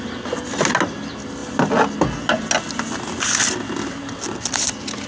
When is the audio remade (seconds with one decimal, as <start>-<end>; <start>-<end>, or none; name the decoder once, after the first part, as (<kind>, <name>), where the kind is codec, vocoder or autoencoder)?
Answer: none